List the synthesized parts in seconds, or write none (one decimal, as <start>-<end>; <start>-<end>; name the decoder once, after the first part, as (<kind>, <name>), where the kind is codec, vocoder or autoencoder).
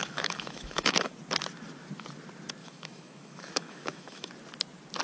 0.0-1.1 (autoencoder, DAC-VAE); 2.6-4.3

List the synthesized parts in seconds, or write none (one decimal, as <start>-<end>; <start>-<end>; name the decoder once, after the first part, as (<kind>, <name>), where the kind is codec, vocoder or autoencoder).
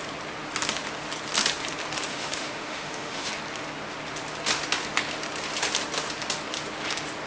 2.1-3.3 (autoencoder, DAC-VAE)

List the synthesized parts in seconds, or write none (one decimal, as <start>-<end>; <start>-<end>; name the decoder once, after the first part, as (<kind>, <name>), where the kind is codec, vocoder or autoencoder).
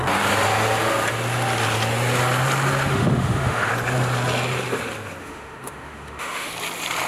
2.9-3.7 (autoencoder, DAC-VAE); 5.2-6.5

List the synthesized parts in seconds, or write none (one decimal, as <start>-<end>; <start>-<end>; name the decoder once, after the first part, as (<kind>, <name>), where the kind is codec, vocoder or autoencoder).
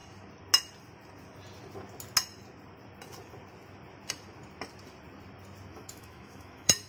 5.7-6.9 (autoencoder, DAC-VAE)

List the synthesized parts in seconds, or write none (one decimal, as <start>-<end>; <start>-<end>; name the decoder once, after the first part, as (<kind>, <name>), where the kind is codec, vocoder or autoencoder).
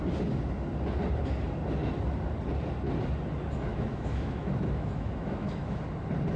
3.7-5.8 (autoencoder, DAC-VAE)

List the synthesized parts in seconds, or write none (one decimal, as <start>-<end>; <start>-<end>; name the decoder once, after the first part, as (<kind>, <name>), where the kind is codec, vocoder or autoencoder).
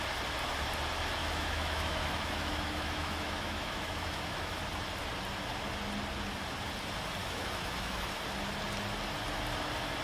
1.2-4.6 (autoencoder, DAC-VAE); 7.2-8.2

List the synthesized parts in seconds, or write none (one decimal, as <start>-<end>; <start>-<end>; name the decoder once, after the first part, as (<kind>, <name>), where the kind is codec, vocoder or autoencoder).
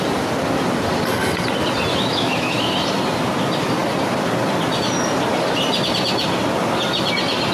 1.9-2.7 (autoencoder, DAC-VAE)